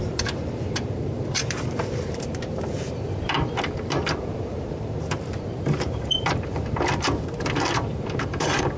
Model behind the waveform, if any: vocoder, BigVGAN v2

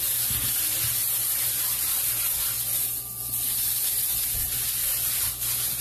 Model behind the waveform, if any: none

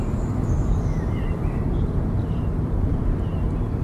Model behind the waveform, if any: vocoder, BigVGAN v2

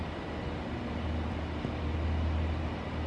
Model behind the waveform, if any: none